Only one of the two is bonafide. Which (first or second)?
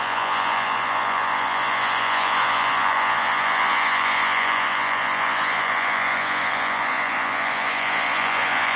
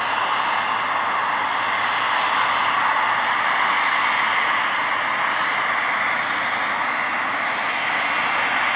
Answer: second